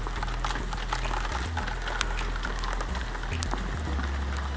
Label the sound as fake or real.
real